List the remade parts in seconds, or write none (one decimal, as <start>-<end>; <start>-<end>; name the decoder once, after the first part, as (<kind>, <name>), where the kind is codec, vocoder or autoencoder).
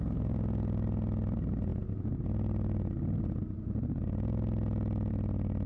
none